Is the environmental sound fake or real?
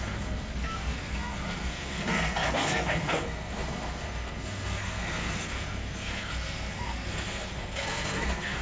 fake